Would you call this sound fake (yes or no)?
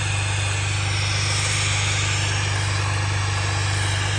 no